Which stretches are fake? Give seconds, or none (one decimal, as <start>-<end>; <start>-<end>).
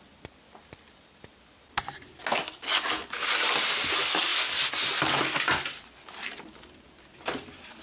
none